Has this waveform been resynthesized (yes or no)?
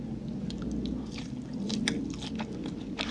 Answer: no